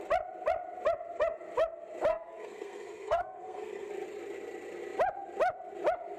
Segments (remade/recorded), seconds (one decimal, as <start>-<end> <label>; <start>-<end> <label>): 0.0-2.1 recorded; 2.1-3.9 remade; 3.9-6.2 recorded